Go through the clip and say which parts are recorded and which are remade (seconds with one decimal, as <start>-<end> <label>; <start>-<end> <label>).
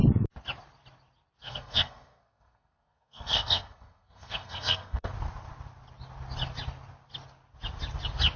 0.0-1.4 recorded; 1.4-5.1 remade; 5.1-8.4 recorded